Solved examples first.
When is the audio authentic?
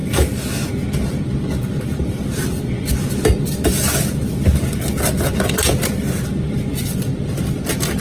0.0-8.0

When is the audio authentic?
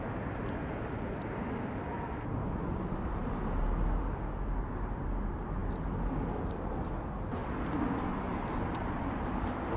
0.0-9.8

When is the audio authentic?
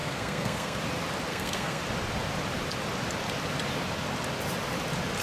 0.8-1.3; 1.8-5.2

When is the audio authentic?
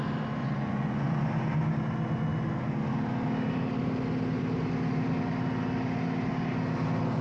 0.0-0.4; 1.2-7.2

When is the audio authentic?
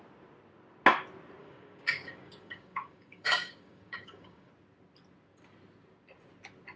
0.0-1.4; 4.5-6.8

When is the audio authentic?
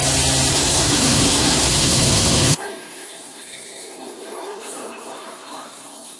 0.0-0.5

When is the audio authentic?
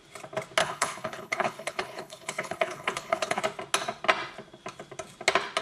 0.0-0.6; 3.4-5.6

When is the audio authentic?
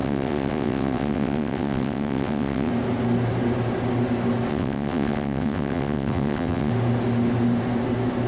2.7-4.5; 6.7-8.3